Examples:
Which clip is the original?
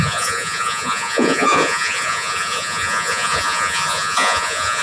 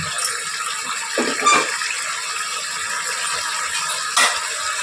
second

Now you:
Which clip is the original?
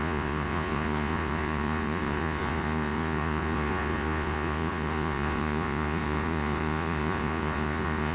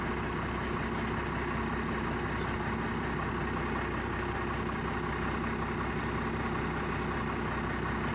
second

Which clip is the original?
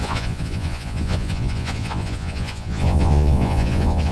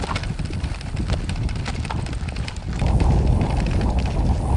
second